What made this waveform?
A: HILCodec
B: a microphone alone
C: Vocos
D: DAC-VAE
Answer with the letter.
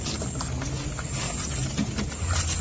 B